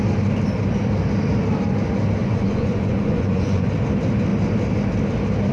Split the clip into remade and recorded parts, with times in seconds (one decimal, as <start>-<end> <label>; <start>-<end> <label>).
0.0-2.2 recorded; 2.2-3.7 remade; 3.7-5.5 recorded